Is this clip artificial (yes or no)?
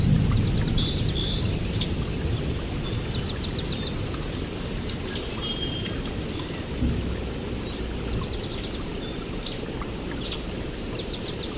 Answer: no